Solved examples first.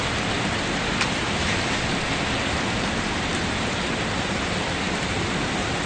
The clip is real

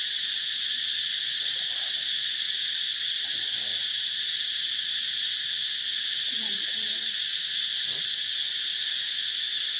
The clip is fake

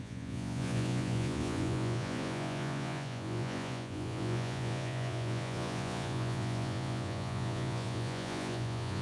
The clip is fake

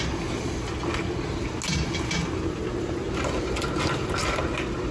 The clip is real